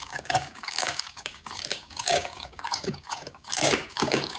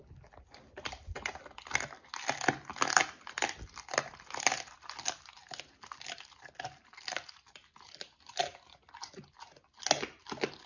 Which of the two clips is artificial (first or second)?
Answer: first